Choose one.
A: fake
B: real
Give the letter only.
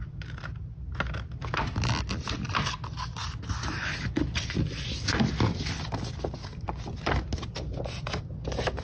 B